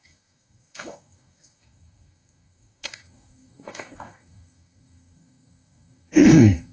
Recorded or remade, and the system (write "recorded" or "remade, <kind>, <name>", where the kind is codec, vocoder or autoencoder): remade, codec, DAC